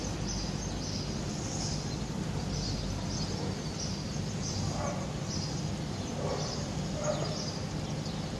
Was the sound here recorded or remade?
recorded